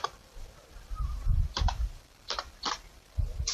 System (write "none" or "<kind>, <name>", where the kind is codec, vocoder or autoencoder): vocoder, BigVGAN v2